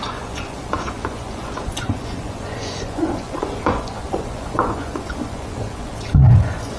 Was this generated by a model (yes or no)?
yes